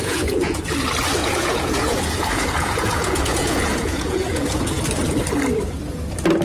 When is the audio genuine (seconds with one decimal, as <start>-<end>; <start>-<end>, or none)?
0.6-1.2; 4.8-6.4